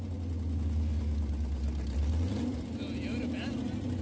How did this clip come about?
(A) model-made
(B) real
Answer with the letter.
B